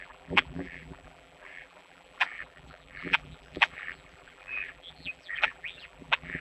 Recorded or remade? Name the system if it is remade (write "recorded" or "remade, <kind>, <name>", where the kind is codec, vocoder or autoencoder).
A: remade, vocoder, BigVGAN v2